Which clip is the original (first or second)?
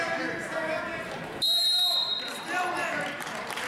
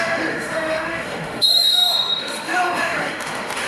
first